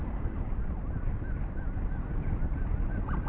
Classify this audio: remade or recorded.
recorded